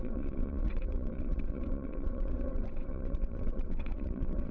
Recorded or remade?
remade